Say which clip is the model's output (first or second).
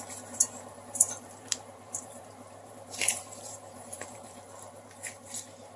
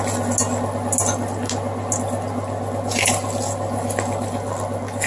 first